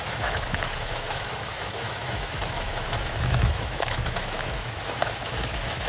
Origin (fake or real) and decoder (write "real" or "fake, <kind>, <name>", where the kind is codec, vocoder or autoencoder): fake, autoencoder, DAC-VAE